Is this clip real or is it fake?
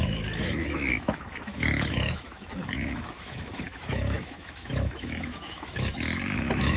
fake